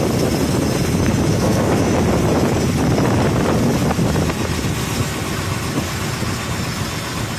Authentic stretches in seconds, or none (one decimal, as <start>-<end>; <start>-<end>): 0.0-1.3; 1.8-7.4